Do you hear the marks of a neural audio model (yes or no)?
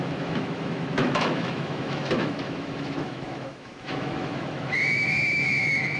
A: yes